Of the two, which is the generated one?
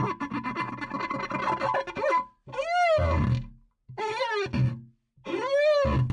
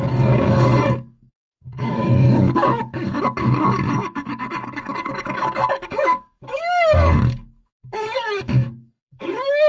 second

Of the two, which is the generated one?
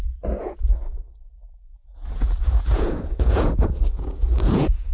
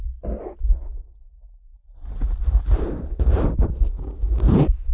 first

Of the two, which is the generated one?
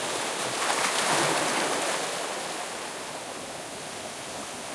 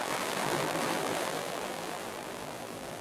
second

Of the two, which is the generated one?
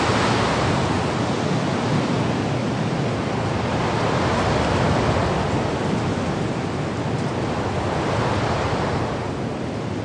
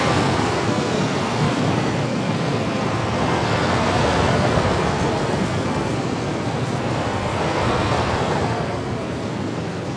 second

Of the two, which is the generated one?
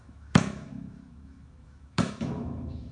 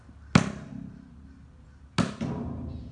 first